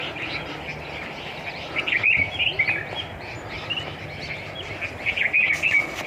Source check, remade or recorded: recorded